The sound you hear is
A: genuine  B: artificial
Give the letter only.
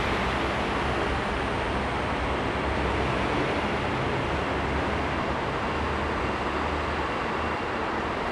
A